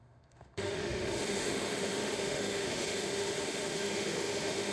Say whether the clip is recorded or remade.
remade